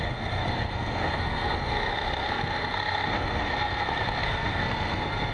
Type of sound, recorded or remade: remade